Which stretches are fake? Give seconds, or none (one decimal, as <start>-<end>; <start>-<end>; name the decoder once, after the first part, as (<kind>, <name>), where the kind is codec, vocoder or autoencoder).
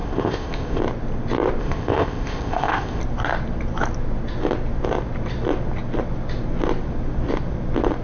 0.0-0.8 (codec, ZipCodec); 1.6-3.0